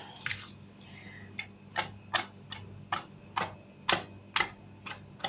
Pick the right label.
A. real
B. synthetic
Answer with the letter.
A